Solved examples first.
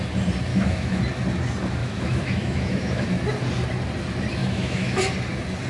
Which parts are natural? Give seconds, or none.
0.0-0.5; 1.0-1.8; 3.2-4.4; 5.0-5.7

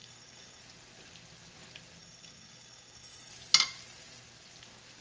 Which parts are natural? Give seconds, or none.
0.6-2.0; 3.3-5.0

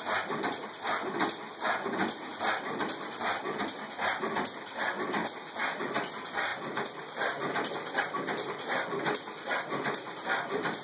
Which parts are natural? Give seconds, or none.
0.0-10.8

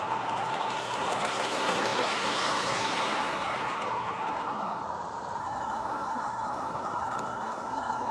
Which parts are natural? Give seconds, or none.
4.8-5.4